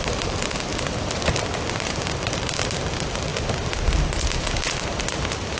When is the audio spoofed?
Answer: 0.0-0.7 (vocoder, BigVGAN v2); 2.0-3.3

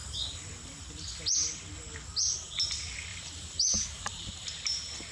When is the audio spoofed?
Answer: 3.1-4.3 (vocoder, BigVGAN v2)

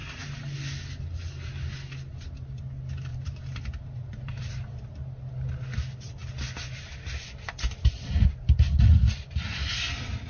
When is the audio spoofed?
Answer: 3.1-4.5 (vocoder, BigVGAN v2)

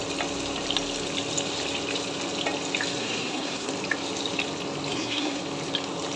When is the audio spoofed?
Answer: 3.0-3.7 (codec, SNAC); 4.9-5.4

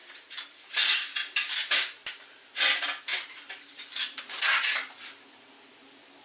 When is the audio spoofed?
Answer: 0.0-1.1 (vocoder, BigVGAN v2); 2.0-2.5; 3.1-4.2

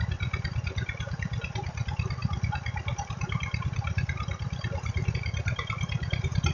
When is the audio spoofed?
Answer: 0.0-6.5 (vocoder, BigVGAN v2)

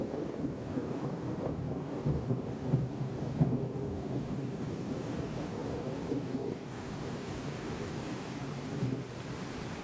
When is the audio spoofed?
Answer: 0.0-9.0 (codec, DAC)

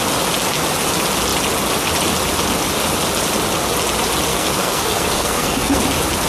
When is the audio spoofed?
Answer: 4.3-5.8 (codec, SNAC)